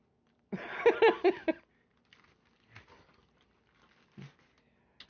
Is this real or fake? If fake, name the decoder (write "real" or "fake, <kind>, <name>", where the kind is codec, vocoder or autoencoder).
real